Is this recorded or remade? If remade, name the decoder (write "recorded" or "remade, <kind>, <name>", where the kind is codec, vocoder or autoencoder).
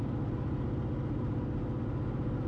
recorded